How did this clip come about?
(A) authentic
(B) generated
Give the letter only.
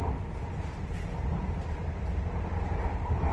A